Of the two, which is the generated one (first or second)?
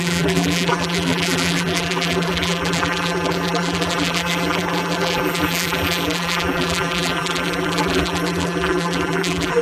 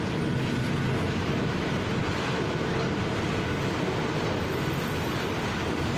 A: first